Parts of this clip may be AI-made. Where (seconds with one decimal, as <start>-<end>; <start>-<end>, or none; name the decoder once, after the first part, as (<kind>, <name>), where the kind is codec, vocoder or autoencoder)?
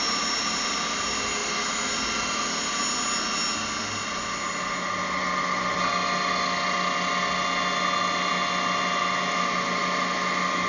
none